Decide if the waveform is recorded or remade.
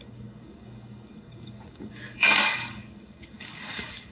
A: remade